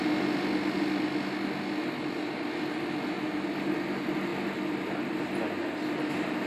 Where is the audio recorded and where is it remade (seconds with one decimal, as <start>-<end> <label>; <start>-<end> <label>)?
0.0-6.5 recorded